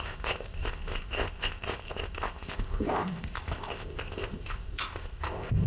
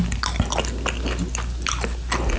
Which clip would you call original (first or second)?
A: second